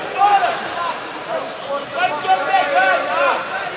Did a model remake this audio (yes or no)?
no